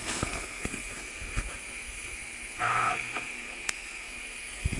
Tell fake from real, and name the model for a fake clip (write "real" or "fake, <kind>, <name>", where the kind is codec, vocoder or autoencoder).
fake, codec, SNAC